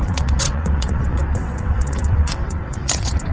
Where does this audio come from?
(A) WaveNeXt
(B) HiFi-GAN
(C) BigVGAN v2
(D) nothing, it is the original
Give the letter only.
A